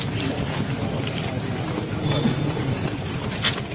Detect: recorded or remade recorded